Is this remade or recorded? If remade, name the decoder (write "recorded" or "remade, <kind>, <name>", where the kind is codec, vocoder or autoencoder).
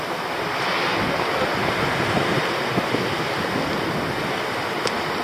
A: recorded